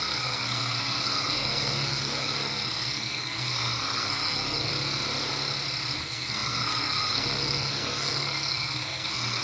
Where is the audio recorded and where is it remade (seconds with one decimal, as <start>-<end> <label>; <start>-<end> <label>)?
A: 0.0-4.7 remade; 4.7-6.0 recorded; 6.0-9.4 remade